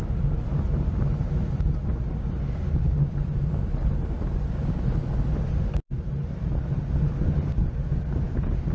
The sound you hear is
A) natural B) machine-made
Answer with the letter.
A